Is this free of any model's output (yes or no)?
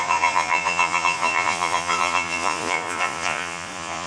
no